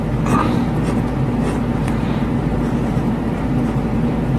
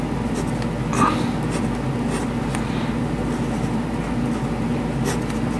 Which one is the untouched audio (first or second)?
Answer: second